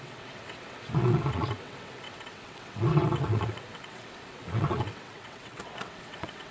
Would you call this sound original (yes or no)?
no